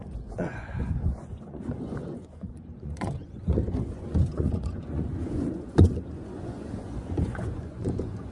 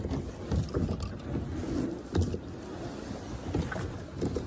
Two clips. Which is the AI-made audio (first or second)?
first